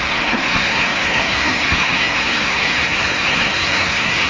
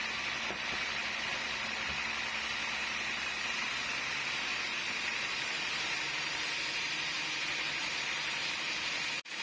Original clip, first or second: second